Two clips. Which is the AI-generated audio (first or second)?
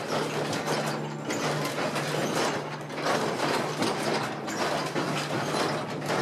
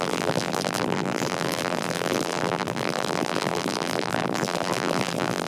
second